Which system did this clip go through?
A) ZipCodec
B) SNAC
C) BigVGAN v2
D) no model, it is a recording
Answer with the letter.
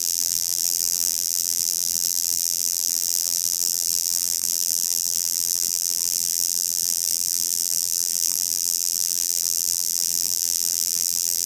C